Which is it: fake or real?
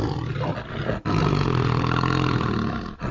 real